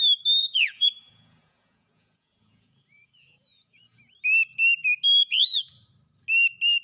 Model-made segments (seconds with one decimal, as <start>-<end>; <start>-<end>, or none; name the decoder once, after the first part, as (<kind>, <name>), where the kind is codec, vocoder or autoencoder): 0.4-4.0 (vocoder, Vocos); 5.2-5.7